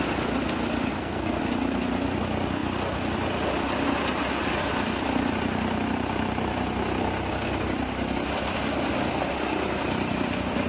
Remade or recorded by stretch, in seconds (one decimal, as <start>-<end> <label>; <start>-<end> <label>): 0.0-0.9 recorded; 0.9-1.4 remade; 1.4-10.7 recorded